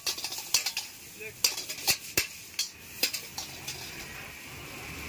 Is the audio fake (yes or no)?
no